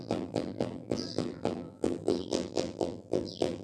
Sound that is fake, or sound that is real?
fake